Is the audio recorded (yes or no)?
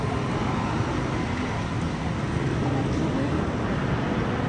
yes